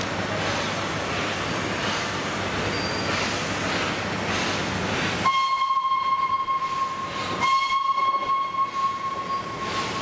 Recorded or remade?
recorded